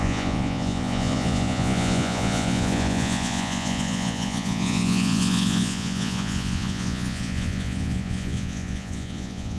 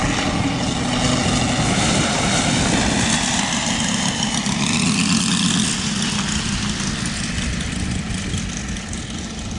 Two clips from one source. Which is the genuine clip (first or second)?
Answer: second